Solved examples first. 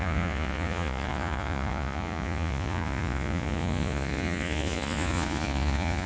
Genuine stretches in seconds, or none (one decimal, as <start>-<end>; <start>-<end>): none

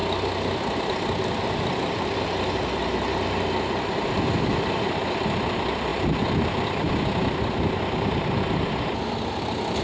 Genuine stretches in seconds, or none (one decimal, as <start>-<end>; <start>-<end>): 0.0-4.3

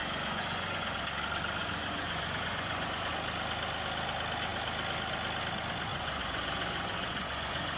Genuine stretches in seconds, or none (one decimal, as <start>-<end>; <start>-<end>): 1.0-1.6; 3.1-5.9